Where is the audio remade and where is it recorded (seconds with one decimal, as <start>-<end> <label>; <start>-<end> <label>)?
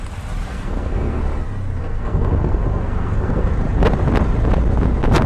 0.0-0.5 recorded; 0.5-1.2 remade; 1.2-1.8 recorded; 1.8-3.5 remade; 3.5-5.3 recorded